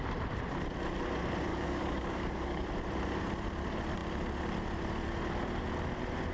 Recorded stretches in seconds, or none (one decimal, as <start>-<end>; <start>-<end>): 0.0-1.5; 2.7-6.3